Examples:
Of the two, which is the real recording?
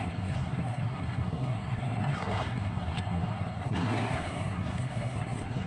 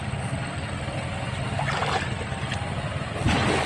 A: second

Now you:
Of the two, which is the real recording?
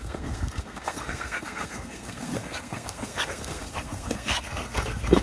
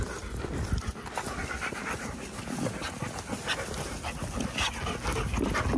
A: second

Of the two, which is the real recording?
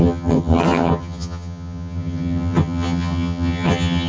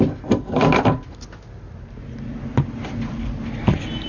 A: second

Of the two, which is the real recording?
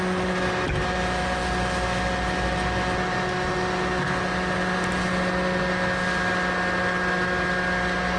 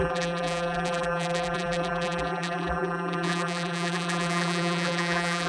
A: first